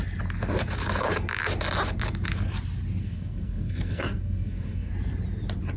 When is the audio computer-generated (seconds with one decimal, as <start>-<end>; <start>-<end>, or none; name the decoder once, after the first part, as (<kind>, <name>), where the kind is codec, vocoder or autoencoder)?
3.0-4.9 (codec, SNAC)